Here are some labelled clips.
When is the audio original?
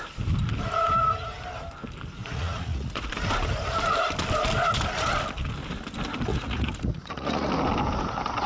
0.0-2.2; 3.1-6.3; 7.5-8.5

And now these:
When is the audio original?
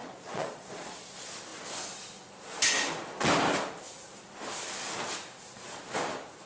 1.1-6.5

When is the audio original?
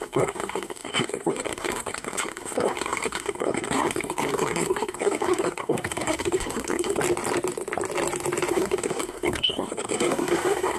7.0-8.5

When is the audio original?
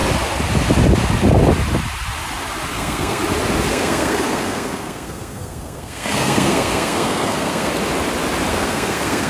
0.0-2.7; 3.2-3.7; 7.7-8.5